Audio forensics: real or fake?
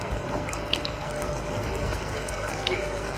fake